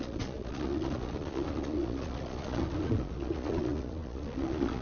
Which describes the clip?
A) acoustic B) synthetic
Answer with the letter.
B